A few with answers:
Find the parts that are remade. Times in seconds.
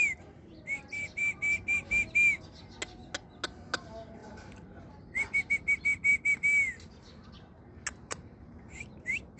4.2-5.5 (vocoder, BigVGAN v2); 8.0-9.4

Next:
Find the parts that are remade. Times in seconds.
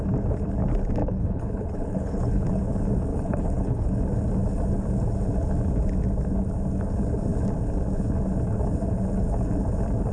1.0-2.6 (codec, HILCodec); 3.1-3.9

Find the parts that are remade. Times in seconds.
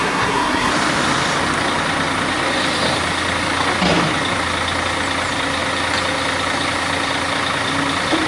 0.0-0.7 (codec, SNAC)